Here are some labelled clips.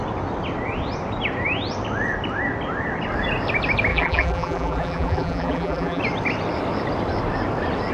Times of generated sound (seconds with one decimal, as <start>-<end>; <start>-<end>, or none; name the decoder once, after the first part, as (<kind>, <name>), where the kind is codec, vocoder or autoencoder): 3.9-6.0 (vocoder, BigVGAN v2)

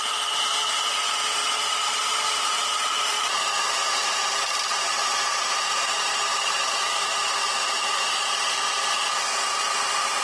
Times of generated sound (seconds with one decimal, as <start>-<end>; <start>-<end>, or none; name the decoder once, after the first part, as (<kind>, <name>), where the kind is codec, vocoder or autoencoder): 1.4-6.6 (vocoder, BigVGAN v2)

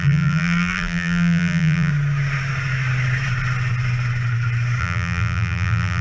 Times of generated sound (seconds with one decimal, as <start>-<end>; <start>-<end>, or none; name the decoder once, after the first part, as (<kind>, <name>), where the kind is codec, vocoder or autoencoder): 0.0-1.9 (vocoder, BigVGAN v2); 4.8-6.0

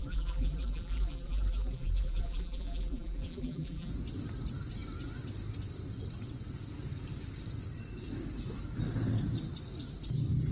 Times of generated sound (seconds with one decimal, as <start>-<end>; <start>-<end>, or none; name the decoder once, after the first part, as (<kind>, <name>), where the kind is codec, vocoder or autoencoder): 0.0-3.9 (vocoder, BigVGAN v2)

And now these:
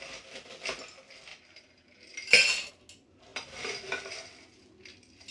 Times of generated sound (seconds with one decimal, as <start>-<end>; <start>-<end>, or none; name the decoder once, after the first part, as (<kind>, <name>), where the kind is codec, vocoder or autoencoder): 1.3-2.7 (vocoder, BigVGAN v2)